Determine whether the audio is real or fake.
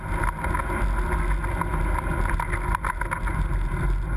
real